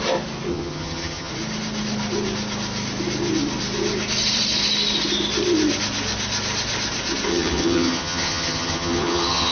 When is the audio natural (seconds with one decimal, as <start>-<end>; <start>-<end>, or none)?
0.0-0.5; 1.3-7.3